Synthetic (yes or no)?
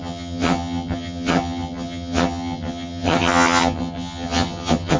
yes